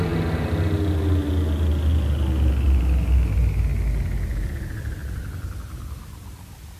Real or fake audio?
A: real